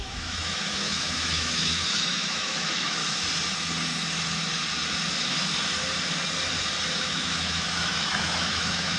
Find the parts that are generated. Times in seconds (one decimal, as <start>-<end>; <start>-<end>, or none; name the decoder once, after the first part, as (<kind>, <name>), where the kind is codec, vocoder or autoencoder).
0.0-3.0 (autoencoder, DAC-VAE); 7.0-9.0